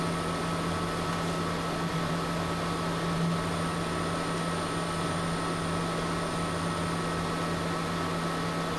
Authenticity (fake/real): real